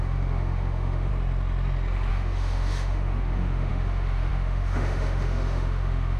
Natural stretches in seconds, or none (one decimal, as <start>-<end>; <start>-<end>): 1.1-2.1